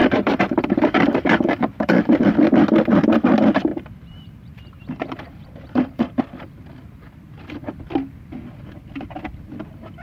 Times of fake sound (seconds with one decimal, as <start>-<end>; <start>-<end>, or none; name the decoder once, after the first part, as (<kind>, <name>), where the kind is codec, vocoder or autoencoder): 0.0-2.2 (vocoder, BigVGAN v2); 3.7-6.2